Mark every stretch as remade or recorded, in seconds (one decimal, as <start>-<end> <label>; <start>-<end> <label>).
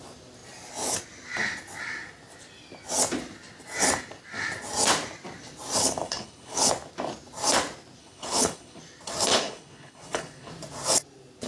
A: 0.0-5.8 recorded; 5.8-6.7 remade; 6.7-8.0 recorded; 8.0-8.8 remade; 8.8-9.3 recorded; 9.3-10.5 remade; 10.5-11.5 recorded